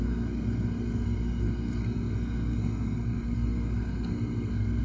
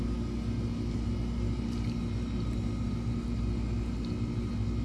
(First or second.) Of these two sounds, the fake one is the first